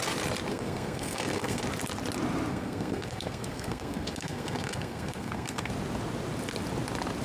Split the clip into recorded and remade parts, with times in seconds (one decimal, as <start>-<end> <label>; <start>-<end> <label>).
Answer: 0.0-0.5 recorded; 0.5-1.6 remade; 1.6-2.5 recorded; 2.5-5.7 remade; 5.7-7.2 recorded